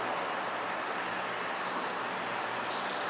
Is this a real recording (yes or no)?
yes